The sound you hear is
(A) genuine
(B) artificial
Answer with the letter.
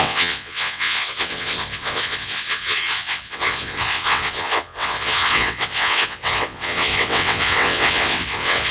B